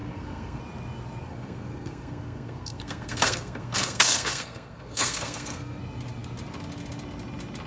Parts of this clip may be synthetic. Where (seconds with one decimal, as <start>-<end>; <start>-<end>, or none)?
0.0-0.6; 1.2-5.8